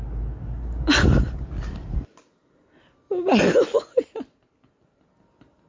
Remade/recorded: recorded